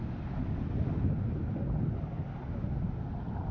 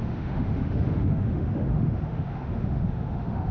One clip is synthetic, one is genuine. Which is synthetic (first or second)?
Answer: second